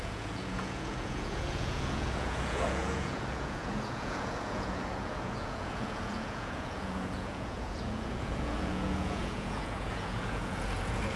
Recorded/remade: remade